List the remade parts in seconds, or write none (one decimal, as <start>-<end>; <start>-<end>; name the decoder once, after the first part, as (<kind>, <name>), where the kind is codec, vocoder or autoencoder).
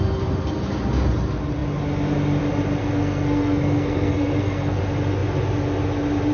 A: 2.8-4.8 (codec, SNAC)